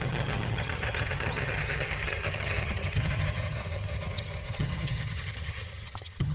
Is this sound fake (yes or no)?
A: yes